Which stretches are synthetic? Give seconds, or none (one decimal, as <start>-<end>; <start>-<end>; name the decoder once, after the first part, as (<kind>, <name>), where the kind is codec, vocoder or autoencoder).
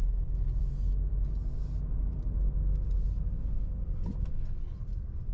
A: none